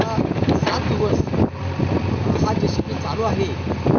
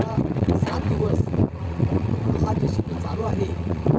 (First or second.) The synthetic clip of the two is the second